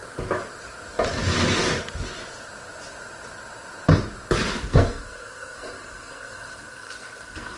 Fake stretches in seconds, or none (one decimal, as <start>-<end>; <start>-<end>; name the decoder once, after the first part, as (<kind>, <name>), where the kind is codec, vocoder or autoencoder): 4.6-7.6 (codec, SNAC)